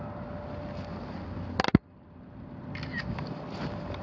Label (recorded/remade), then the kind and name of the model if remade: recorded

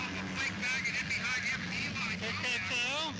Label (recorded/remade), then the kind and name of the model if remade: recorded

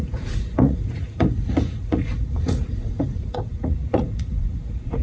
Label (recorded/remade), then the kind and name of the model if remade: remade, vocoder, Vocos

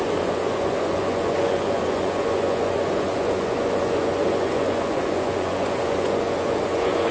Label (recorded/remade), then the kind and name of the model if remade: remade, vocoder, Vocos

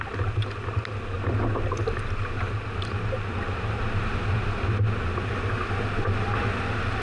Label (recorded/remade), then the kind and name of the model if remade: recorded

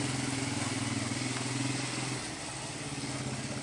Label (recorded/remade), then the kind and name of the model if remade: recorded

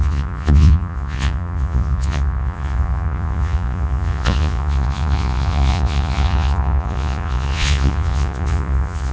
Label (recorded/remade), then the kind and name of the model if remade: remade, vocoder, Vocos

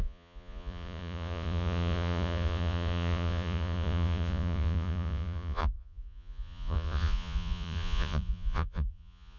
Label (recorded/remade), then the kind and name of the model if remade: remade, vocoder, Vocos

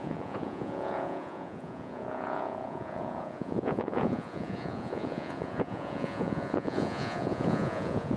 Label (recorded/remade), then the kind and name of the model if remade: remade, vocoder, Vocos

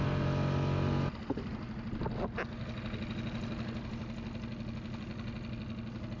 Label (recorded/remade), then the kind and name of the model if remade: recorded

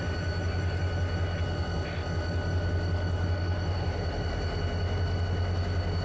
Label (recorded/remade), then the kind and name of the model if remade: recorded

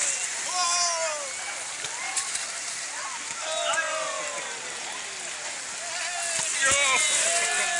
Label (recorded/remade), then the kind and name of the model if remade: recorded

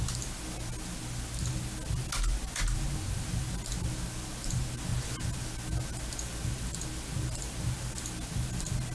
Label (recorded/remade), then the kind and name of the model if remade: recorded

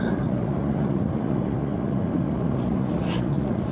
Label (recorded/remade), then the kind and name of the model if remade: remade, vocoder, Vocos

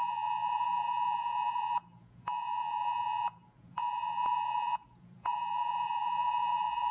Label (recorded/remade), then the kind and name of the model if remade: remade, vocoder, Vocos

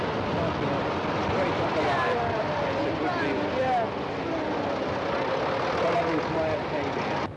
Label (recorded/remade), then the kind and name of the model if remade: recorded